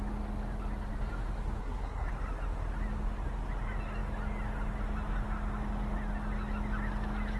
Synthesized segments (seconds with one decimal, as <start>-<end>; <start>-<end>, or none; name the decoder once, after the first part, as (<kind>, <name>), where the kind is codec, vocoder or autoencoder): 1.6-2.1 (codec, SNAC)